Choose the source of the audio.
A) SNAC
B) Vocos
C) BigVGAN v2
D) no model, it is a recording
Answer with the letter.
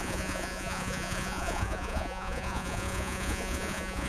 B